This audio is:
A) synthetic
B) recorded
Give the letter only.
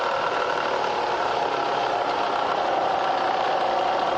B